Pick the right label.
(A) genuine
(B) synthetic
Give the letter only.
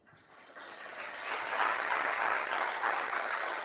B